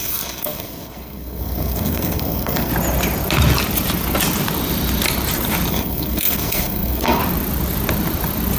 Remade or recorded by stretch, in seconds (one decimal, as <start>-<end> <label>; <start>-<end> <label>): 0.0-2.7 remade; 2.7-5.7 recorded; 5.7-7.2 remade; 7.2-8.6 recorded